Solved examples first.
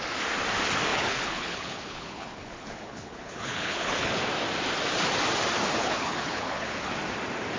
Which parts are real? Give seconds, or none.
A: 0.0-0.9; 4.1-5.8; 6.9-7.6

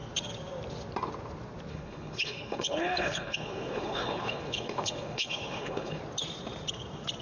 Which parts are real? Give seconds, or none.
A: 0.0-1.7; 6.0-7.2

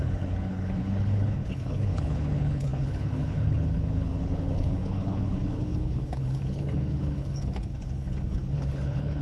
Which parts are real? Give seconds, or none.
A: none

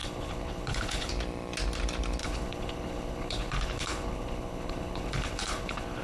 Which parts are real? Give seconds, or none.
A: 1.1-2.2